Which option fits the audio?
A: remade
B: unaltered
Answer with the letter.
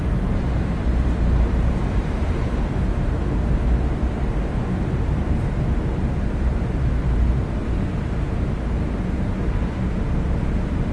A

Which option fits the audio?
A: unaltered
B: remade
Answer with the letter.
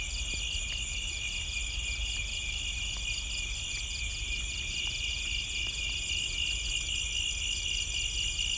A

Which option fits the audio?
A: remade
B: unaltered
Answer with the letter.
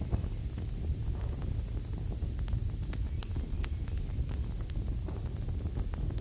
B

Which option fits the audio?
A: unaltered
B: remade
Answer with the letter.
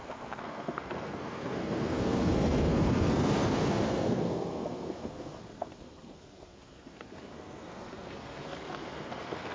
B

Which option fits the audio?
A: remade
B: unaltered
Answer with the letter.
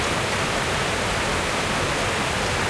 B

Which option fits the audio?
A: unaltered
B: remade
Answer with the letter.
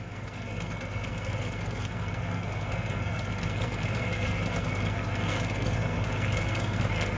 B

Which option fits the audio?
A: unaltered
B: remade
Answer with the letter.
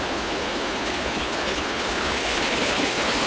B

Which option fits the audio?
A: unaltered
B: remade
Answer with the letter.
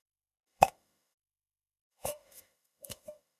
B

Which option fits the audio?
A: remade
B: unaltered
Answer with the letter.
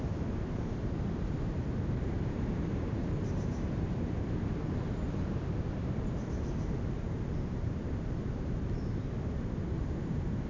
A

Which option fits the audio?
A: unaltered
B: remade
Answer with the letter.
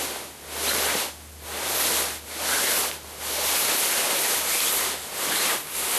A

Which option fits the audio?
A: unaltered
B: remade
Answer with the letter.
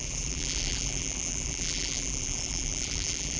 B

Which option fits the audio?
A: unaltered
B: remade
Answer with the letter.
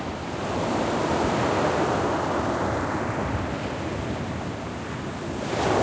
A